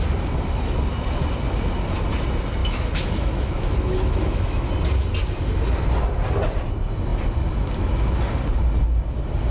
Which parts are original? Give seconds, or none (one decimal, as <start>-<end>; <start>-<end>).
0.0-2.6; 4.7-9.5